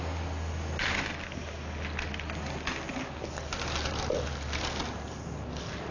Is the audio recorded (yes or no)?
yes